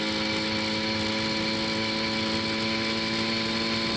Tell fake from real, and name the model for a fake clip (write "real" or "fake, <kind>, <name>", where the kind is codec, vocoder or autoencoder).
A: real